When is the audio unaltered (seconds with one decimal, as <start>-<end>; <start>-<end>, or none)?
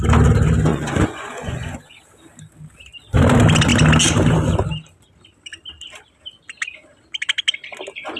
0.0-0.7; 2.0-8.2